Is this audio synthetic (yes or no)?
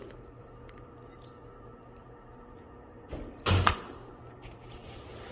yes